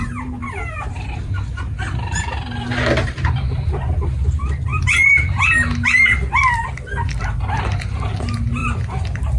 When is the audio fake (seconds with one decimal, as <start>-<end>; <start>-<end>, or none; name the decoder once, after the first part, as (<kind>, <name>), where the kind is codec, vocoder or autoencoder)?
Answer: 0.4-1.6 (vocoder, BigVGAN v2); 8.6-9.4